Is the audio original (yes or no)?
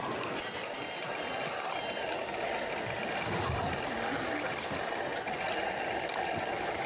yes